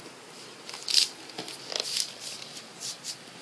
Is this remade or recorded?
recorded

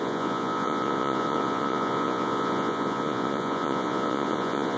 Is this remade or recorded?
remade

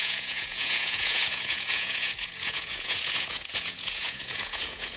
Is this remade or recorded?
remade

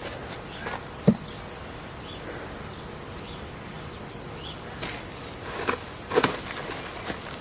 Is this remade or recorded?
recorded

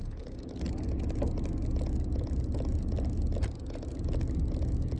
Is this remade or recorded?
recorded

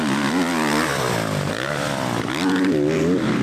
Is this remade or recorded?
recorded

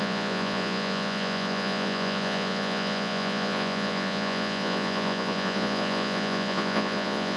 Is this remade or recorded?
remade